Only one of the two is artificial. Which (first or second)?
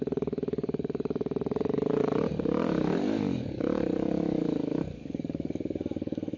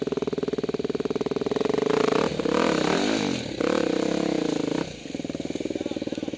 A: first